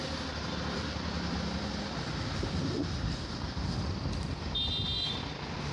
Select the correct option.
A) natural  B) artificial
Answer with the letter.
A